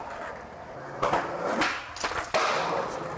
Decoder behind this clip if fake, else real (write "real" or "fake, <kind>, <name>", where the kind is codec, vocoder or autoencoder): real